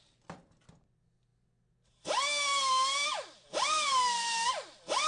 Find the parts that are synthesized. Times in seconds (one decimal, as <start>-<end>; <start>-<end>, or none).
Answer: none

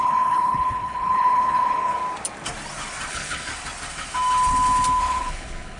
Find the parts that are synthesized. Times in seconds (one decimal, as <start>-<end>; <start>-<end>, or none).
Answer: 0.0-2.0; 3.1-3.5; 5.0-5.8

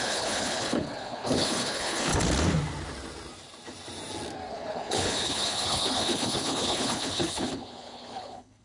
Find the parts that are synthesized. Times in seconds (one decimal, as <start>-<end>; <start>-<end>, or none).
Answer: 0.0-2.1; 4.5-8.6

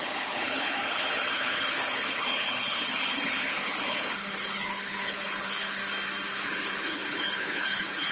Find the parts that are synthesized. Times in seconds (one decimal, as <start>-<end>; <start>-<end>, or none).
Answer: 0.0-5.8; 6.3-8.1

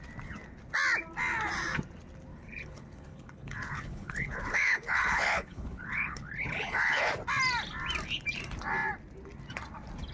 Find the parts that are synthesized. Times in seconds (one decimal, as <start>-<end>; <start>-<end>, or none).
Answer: 2.3-7.1

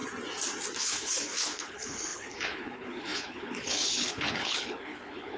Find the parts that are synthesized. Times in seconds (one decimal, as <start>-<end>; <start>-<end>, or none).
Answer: 0.8-5.4